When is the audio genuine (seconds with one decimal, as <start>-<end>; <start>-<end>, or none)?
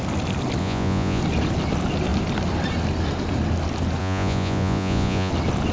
0.0-0.6; 1.2-4.0; 5.3-5.7